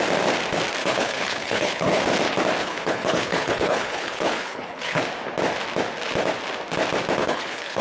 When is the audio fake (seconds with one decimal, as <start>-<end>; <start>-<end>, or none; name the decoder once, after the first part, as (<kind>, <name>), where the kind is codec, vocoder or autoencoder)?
0.8-2.0 (codec, HILCodec); 2.6-5.0; 7.2-7.8